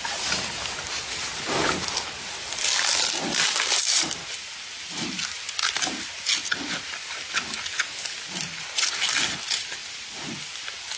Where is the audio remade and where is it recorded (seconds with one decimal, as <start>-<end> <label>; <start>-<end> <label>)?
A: 0.0-11.0 recorded